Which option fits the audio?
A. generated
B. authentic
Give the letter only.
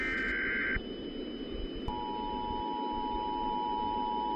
B